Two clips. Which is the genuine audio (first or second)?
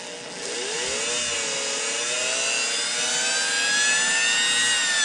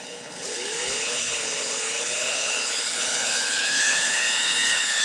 first